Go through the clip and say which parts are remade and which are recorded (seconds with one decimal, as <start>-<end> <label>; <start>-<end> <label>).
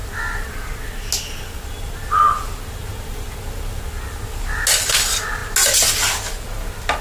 0.0-7.0 recorded